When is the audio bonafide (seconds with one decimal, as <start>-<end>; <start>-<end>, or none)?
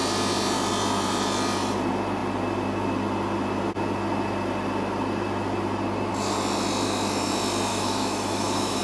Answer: 0.0-7.7